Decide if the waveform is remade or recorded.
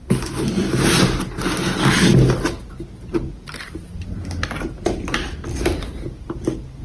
recorded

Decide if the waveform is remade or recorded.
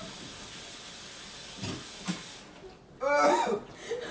recorded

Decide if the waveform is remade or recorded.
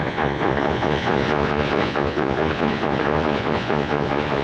remade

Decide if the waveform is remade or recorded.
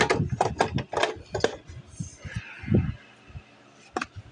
recorded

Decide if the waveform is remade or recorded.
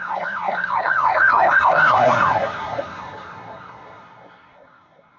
remade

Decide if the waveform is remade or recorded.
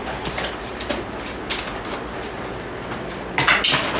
recorded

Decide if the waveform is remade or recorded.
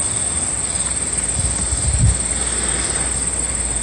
recorded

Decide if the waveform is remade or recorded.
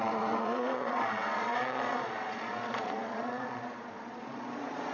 remade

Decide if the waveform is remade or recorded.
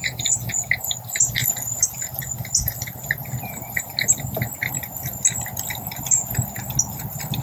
recorded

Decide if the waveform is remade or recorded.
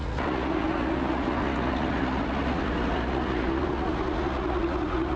remade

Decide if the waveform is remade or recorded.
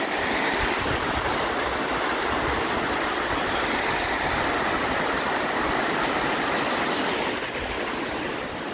recorded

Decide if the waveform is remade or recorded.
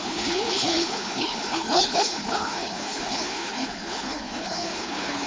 remade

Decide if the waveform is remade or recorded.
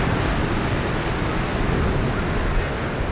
recorded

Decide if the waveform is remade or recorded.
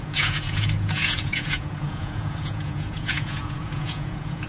remade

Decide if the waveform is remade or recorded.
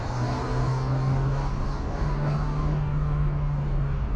remade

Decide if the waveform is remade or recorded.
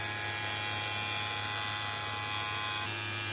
recorded